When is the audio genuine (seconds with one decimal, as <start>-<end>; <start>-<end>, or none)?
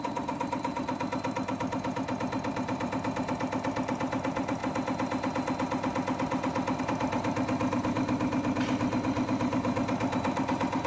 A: 4.6-6.8